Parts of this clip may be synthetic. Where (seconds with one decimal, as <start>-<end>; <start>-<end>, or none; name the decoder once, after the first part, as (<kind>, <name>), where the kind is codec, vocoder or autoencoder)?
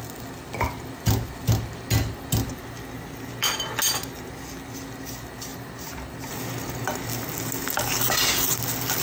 5.5-6.0 (vocoder, BigVGAN v2)